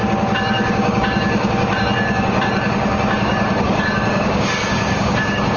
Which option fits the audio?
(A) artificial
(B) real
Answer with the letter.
A